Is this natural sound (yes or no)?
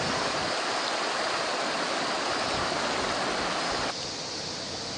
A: yes